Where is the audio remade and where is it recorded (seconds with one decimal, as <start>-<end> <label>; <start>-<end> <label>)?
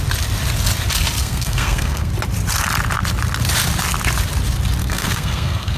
0.0-1.2 recorded; 1.2-2.1 remade; 2.1-4.8 recorded; 4.8-5.8 remade